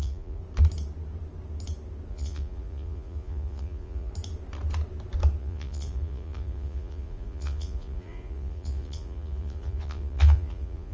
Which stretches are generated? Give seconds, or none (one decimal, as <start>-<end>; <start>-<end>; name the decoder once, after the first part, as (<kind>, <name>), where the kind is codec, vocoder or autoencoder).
0.0-0.4 (vocoder, Vocos); 2.1-4.1; 5.4-10.9

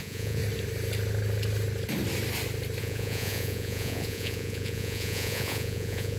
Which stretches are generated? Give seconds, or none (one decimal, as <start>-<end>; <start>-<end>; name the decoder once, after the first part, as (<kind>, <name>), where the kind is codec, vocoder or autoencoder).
0.0-0.4 (vocoder, Vocos); 2.8-6.2

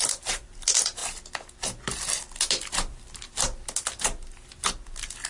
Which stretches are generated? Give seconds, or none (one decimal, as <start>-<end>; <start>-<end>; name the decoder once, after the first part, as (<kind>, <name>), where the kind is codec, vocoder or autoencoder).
none